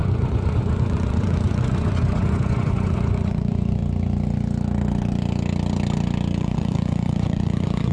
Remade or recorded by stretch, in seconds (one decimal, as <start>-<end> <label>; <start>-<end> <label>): 0.0-3.8 remade; 3.8-6.4 recorded; 6.4-7.9 remade